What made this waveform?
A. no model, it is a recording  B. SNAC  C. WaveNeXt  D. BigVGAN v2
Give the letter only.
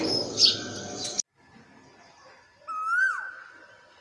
A